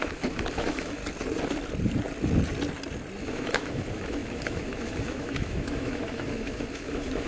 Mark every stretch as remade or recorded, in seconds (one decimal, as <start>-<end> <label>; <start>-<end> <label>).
0.0-1.0 remade; 1.0-3.2 recorded; 3.2-7.3 remade

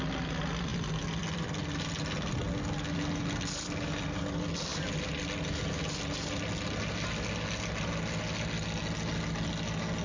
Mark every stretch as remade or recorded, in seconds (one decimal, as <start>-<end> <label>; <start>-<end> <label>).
0.0-10.0 recorded

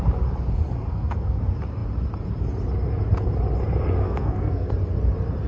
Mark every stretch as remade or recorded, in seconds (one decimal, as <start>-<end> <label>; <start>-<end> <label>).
0.0-0.8 recorded; 0.8-1.4 remade; 1.4-4.0 recorded; 4.0-4.7 remade; 4.7-5.5 recorded

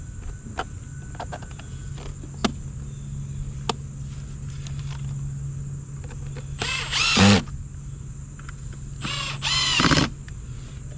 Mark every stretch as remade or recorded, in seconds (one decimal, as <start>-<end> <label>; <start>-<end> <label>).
0.0-1.3 recorded; 1.3-1.9 remade; 1.9-11.0 recorded

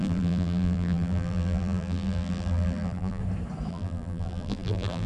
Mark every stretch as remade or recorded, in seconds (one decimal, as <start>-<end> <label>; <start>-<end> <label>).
0.0-3.2 remade; 3.2-3.7 recorded; 3.7-5.1 remade